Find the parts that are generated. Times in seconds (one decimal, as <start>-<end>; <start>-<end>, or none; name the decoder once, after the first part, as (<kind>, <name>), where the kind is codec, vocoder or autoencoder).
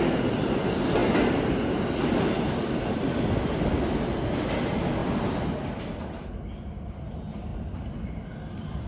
none